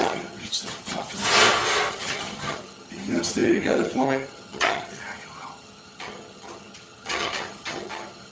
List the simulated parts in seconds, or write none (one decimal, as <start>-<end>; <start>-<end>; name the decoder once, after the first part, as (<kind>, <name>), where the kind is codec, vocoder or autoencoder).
0.0-1.2 (vocoder, HiFi-GAN); 1.9-8.3